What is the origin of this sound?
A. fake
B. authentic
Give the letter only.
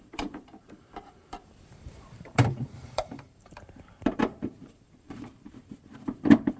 A